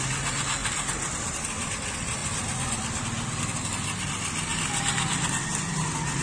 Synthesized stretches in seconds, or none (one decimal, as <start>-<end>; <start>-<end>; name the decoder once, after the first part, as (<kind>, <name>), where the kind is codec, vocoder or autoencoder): 0.6-1.7 (vocoder, BigVGAN v2); 2.2-3.0; 4.5-5.3